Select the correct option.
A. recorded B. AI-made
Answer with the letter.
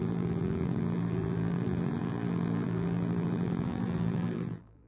B